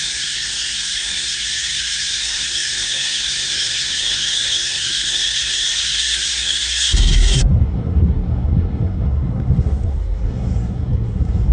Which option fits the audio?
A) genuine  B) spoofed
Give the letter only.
B